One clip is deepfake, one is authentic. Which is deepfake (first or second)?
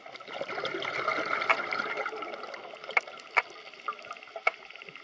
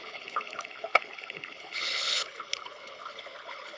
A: second